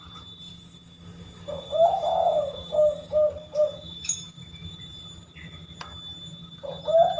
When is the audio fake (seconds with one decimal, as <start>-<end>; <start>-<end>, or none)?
0.5-4.8